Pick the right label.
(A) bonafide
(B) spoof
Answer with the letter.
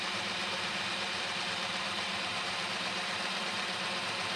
B